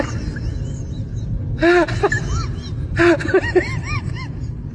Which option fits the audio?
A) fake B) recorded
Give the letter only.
B